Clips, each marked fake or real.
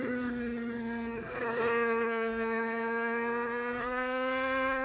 fake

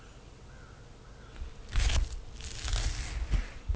real